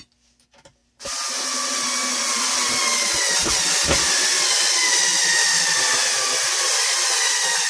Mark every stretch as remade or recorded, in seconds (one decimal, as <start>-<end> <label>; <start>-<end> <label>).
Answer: 0.0-0.8 remade; 0.8-5.4 recorded; 5.4-6.0 remade; 6.0-7.2 recorded; 7.2-7.7 remade